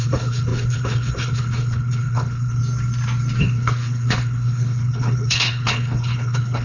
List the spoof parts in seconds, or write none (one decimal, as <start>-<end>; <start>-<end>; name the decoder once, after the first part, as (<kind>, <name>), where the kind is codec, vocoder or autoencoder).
0.0-2.6 (codec, HILCodec); 3.4-6.6